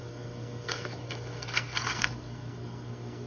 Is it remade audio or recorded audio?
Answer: remade